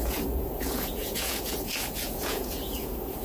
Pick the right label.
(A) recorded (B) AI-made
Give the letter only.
B